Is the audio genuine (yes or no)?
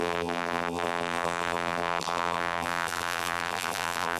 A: no